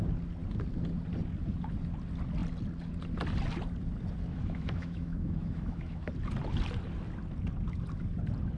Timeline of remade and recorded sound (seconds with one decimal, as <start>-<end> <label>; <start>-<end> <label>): 0.0-4.3 recorded; 4.3-6.1 remade; 6.1-8.6 recorded